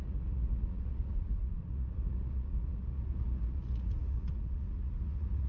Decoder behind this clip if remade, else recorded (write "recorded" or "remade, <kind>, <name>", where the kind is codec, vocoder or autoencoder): remade, vocoder, Vocos